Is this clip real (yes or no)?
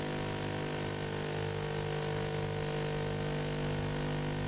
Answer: yes